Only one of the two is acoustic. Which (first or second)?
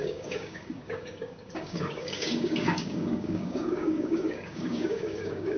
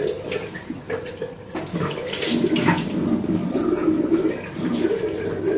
second